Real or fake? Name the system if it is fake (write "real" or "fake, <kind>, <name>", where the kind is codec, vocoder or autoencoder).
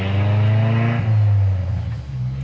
real